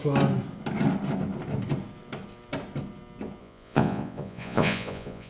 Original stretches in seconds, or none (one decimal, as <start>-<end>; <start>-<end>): 0.0-3.4